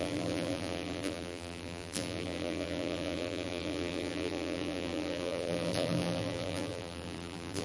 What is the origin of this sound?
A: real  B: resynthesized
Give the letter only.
B